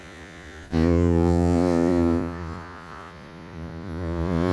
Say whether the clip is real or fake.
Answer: fake